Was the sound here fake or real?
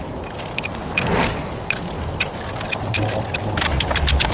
real